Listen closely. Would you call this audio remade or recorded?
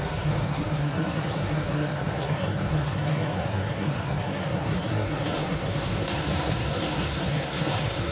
remade